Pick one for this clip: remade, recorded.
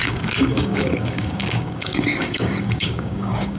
remade